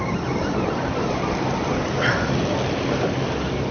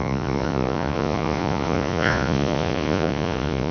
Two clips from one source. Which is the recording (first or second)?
first